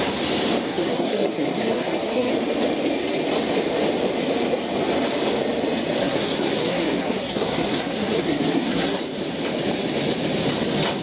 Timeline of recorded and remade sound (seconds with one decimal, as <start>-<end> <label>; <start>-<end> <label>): 0.0-0.7 recorded; 0.7-2.3 remade; 2.3-6.0 recorded; 6.0-9.0 remade; 9.0-11.0 recorded